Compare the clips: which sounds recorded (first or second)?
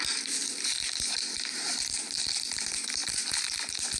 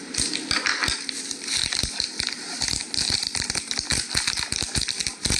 first